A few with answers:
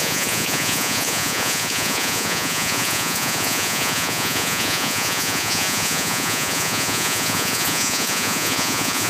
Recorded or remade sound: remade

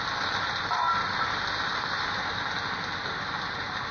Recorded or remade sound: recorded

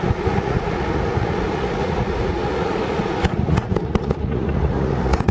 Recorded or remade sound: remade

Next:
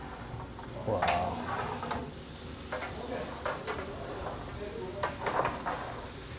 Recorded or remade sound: recorded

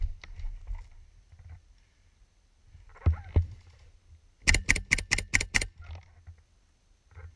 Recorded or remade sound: recorded